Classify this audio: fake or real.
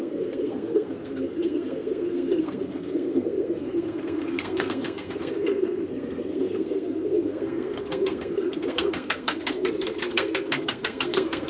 fake